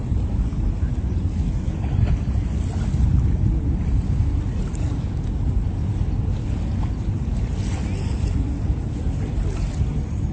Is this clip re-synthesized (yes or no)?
no